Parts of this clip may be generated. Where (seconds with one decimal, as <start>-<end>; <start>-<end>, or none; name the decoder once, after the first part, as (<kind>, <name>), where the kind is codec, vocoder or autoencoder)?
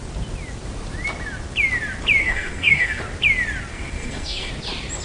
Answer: 2.2-3.0 (codec, SNAC); 3.7-4.5